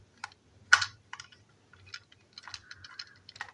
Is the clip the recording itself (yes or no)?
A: yes